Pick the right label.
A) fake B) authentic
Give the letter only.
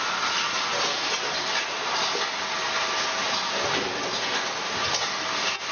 B